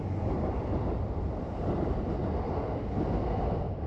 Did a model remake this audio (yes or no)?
yes